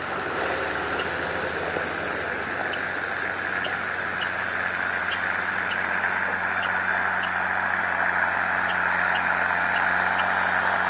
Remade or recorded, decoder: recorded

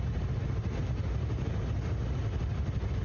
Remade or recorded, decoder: recorded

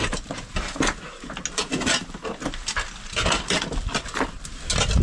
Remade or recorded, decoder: recorded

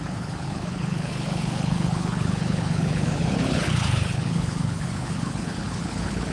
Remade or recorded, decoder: remade, codec, HILCodec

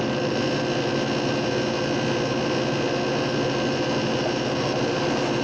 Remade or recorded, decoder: recorded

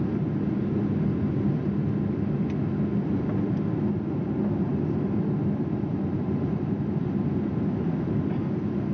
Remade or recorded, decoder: recorded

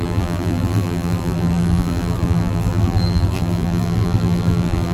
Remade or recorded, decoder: remade, vocoder, BigVGAN v2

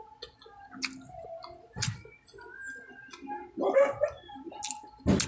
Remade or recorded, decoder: recorded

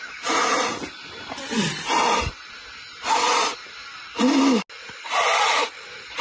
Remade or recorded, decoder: recorded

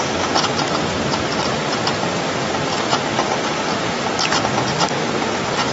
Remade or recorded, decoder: remade, vocoder, BigVGAN v2